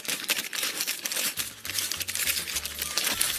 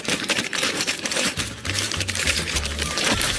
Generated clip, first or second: second